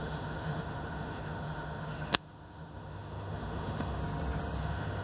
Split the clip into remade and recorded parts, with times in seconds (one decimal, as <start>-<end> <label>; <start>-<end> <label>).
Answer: 0.0-4.0 remade; 4.0-4.6 recorded; 4.6-5.0 remade